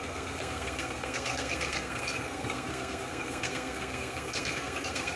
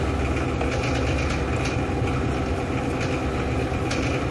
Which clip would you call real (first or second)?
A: second